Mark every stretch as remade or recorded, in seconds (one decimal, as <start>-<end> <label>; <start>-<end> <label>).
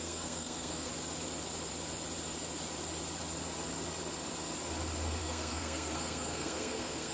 0.0-0.9 remade; 0.9-5.2 recorded; 5.2-7.1 remade